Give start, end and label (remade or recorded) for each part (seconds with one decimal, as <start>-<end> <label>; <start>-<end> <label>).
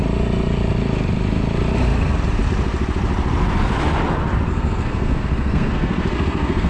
0.0-4.5 recorded; 4.5-6.7 remade